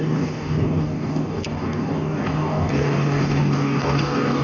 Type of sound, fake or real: fake